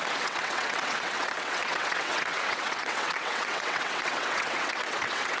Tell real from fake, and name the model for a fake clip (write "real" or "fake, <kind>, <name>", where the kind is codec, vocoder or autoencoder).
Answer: fake, vocoder, WaveNeXt